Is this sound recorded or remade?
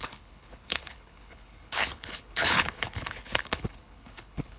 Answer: remade